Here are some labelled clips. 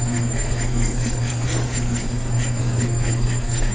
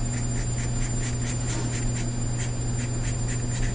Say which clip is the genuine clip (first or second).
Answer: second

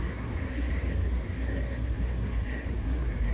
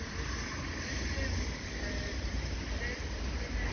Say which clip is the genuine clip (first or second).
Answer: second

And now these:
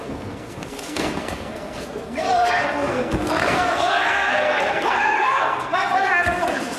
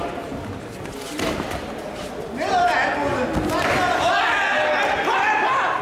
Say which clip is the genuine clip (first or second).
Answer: second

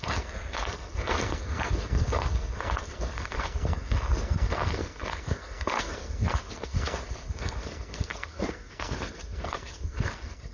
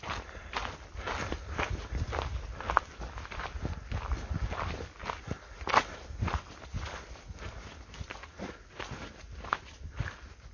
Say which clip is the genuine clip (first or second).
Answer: second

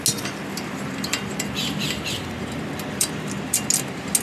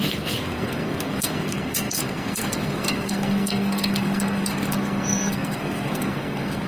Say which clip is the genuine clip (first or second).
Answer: first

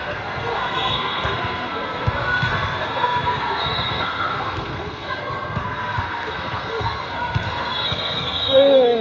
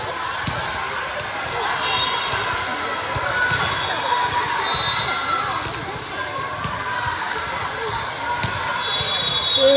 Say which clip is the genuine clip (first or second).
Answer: second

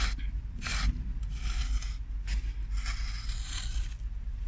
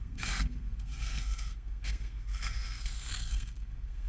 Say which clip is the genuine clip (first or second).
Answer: first